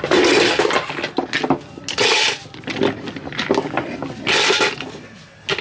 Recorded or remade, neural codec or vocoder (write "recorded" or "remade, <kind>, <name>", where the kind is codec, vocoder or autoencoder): recorded